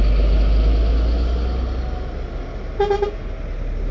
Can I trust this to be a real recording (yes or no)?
yes